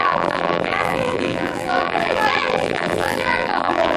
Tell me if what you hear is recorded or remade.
remade